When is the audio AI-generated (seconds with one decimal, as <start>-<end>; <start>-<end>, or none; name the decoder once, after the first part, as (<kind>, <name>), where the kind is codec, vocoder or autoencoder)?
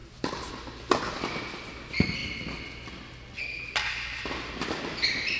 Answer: 0.0-0.5 (vocoder, BigVGAN v2)